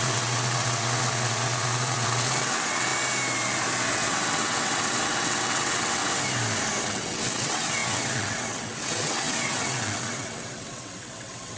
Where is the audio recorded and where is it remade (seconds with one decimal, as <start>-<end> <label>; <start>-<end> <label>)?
0.0-2.9 remade; 2.9-3.8 recorded; 3.8-6.0 remade; 6.0-6.8 recorded; 6.8-11.6 remade